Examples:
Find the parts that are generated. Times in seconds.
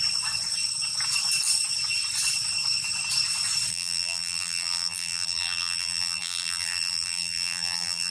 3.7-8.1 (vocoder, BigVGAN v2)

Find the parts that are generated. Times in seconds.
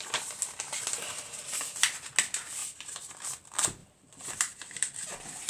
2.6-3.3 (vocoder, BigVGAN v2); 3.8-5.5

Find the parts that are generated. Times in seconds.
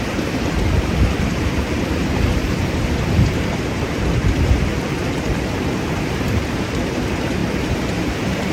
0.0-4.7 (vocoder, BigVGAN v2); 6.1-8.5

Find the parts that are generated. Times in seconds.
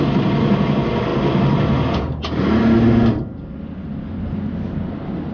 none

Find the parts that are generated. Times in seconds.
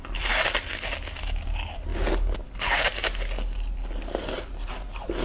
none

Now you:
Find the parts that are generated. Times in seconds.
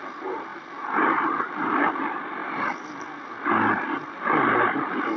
none